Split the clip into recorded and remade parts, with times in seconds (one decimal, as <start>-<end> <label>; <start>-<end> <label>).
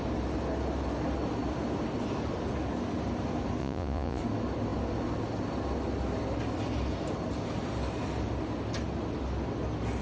0.0-3.6 recorded; 3.6-4.2 remade; 4.2-10.0 recorded